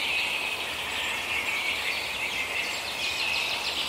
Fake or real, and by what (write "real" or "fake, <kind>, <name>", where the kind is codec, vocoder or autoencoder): real